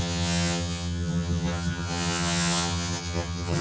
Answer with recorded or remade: remade